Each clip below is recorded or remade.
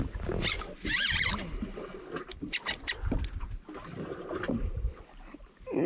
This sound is recorded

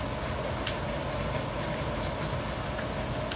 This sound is recorded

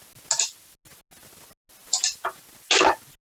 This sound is recorded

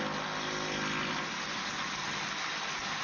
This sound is recorded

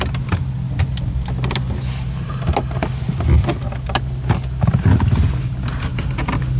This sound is recorded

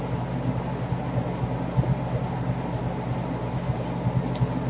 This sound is recorded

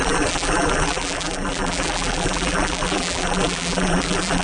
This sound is remade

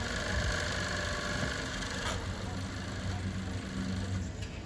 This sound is recorded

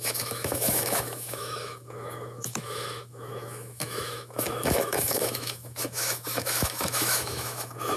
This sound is remade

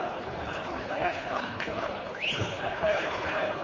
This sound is remade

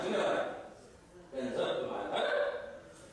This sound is recorded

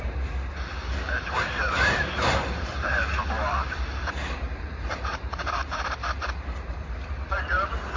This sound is remade